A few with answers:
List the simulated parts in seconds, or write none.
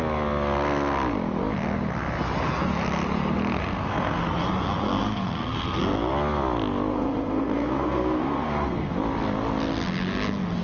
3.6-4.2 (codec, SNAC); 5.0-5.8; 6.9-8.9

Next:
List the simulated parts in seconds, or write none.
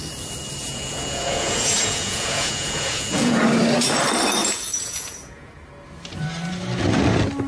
0.6-3.4 (vocoder, Vocos); 4.4-5.5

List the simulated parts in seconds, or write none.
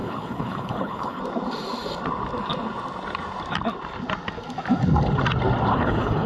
0.0-1.2 (codec, HILCodec); 5.7-6.3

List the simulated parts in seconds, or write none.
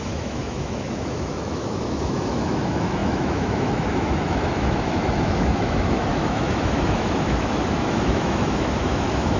0.0-9.4 (autoencoder, DAC-VAE)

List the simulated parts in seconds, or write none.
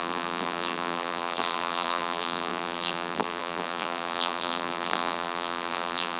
0.0-6.2 (vocoder, BigVGAN v2)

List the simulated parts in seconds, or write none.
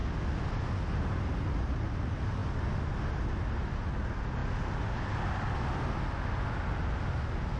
none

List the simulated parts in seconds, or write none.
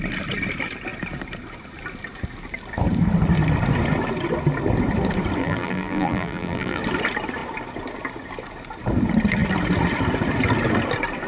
5.4-6.8 (vocoder, BigVGAN v2)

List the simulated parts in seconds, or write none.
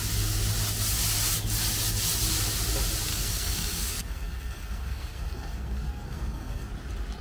3.1-6.7 (codec, SNAC)